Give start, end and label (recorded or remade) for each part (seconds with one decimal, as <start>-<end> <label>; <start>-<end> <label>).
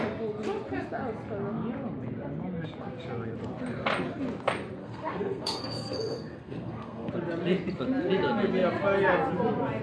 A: 0.0-4.8 recorded; 4.8-7.1 remade; 7.1-9.8 recorded